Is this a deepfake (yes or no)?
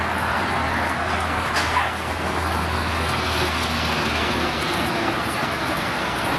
yes